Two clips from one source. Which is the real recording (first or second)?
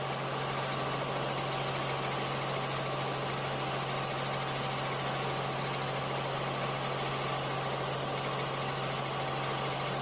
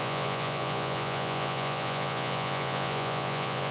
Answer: first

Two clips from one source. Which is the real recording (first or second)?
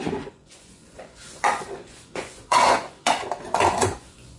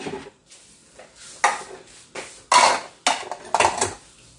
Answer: second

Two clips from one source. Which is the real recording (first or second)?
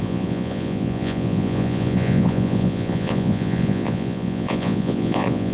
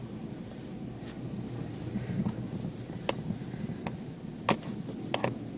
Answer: second